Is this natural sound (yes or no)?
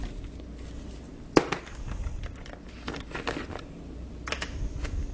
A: yes